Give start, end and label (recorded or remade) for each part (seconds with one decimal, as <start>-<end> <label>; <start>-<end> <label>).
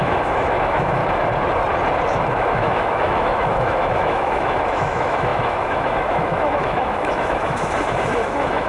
0.0-1.0 remade; 1.0-2.3 recorded; 2.3-8.7 remade